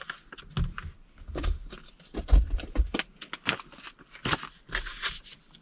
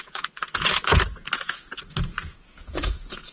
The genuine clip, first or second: first